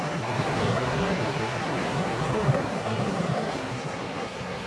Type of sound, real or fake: fake